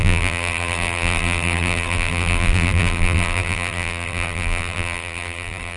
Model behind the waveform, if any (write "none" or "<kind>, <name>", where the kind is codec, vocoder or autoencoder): vocoder, BigVGAN v2